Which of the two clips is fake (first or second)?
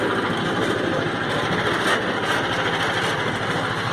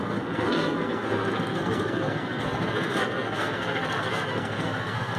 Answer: second